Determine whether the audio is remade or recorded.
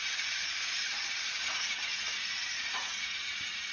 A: remade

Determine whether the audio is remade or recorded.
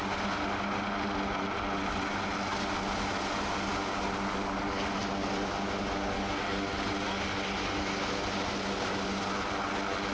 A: recorded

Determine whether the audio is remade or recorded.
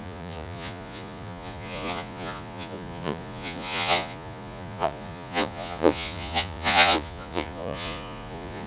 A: remade